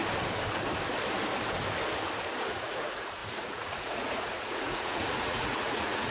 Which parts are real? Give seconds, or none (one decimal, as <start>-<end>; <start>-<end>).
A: 0.0-2.4

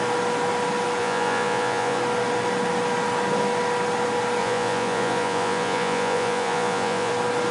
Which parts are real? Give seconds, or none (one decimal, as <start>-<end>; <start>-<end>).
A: 0.0-1.0; 2.0-4.4; 7.1-7.5

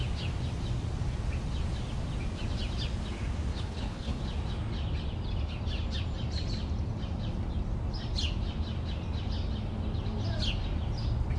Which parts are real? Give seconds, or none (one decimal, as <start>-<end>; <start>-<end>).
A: 0.0-3.5; 4.2-11.4

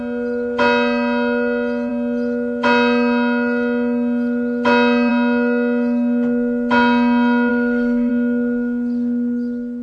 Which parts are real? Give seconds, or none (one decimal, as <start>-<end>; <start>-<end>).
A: 0.0-7.5; 8.1-9.8

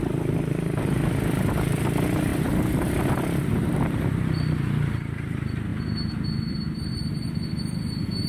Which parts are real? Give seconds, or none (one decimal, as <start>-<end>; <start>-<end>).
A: 2.3-4.6; 5.7-6.5